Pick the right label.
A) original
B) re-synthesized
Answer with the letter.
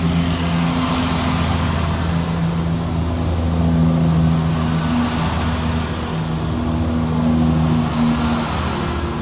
A